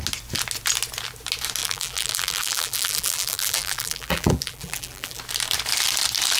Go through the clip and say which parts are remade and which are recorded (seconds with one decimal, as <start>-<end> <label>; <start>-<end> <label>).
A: 0.0-1.6 recorded; 1.6-5.2 remade; 5.2-6.4 recorded